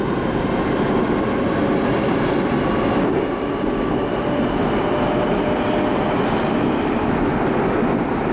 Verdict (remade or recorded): recorded